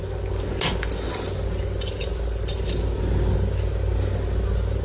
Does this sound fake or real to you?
real